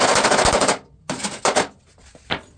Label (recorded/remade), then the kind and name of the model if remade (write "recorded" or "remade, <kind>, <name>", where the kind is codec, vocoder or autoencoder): recorded